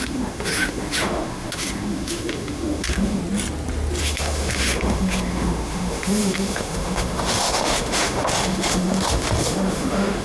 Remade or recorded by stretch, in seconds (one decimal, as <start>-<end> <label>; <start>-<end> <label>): 0.0-3.2 remade; 3.2-4.0 recorded; 4.0-10.2 remade